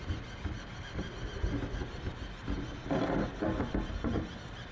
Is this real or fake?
real